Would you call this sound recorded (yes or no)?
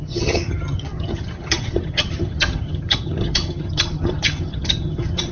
no